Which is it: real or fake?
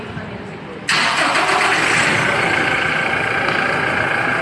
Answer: real